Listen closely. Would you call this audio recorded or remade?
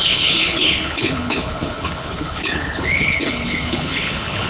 remade